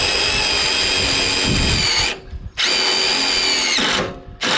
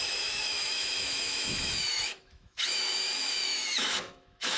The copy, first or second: second